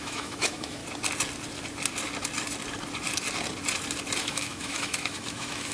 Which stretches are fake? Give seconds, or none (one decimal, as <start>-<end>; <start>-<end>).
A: 0.0-0.8; 4.2-5.7